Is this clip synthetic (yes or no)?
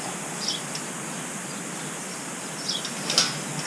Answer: no